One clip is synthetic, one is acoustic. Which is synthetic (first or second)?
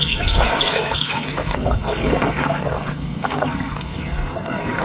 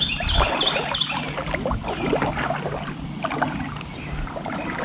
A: first